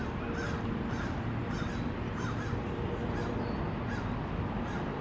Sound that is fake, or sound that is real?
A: real